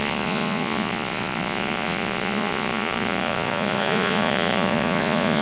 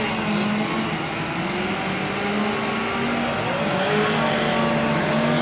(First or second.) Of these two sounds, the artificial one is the first